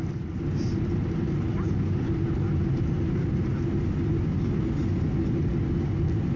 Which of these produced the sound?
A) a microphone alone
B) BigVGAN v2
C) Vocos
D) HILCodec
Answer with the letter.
A